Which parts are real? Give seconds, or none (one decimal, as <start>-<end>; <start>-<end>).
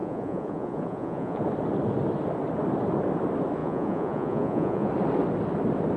1.4-3.6; 4.9-6.0